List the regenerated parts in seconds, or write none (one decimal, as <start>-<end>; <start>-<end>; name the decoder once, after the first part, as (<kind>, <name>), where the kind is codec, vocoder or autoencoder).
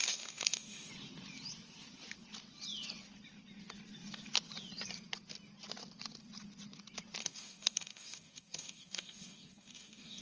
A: 0.0-0.9 (codec, DAC); 7.2-10.2